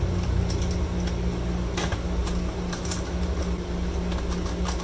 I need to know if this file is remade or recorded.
recorded